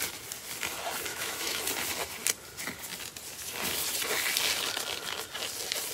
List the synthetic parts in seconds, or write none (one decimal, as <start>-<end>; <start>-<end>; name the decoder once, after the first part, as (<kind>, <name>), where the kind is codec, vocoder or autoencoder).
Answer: 1.1-1.6 (autoencoder, DAC-VAE)